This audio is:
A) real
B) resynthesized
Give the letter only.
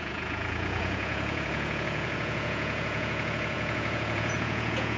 B